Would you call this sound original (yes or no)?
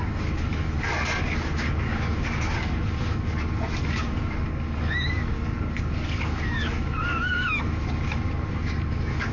no